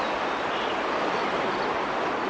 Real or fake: real